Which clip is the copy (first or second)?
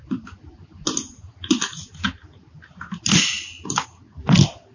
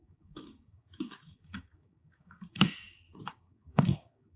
second